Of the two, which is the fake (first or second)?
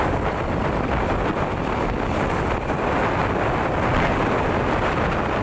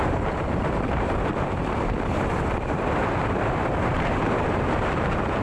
second